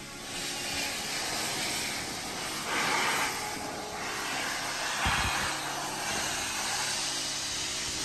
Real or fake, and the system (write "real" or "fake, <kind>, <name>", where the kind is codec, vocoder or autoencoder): real